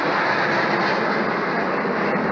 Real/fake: real